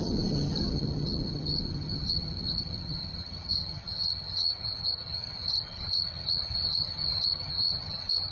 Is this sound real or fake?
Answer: fake